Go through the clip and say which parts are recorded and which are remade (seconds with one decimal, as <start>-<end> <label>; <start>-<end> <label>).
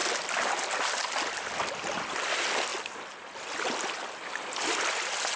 0.0-5.4 recorded